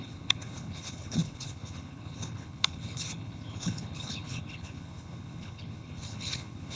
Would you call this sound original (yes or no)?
no